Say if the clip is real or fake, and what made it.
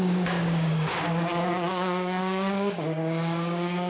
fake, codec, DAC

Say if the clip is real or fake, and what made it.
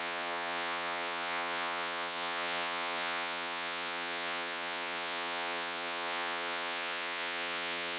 fake, vocoder, Vocos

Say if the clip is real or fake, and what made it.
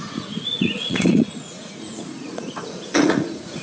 fake, vocoder, Vocos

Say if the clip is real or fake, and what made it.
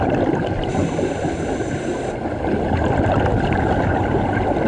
real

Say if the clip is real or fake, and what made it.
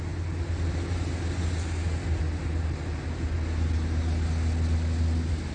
real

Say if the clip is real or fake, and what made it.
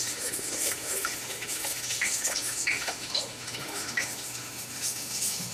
fake, autoencoder, DAC-VAE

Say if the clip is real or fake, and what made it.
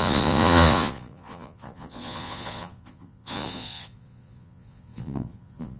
fake, vocoder, Vocos